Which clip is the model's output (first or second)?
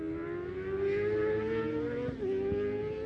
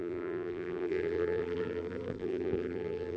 second